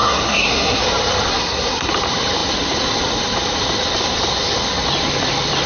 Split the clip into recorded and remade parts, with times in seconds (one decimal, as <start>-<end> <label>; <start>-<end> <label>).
0.0-0.8 remade; 0.8-1.3 recorded; 1.3-1.9 remade; 1.9-5.7 recorded